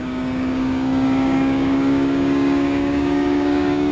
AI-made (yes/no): yes